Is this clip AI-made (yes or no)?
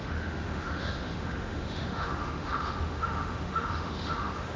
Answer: yes